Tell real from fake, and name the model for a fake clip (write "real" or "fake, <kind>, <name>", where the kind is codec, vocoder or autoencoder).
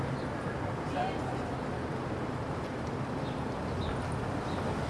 real